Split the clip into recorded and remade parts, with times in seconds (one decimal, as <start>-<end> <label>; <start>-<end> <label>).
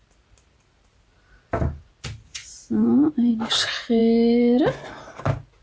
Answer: 0.0-2.4 recorded; 2.4-3.3 remade; 3.3-5.6 recorded